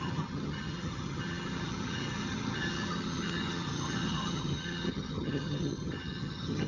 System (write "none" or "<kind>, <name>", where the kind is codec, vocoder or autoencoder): vocoder, HiFi-GAN